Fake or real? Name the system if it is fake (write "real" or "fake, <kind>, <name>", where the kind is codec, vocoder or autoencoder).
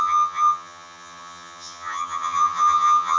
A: fake, vocoder, HiFi-GAN